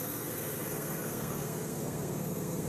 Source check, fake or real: fake